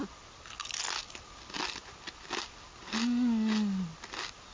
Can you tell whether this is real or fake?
real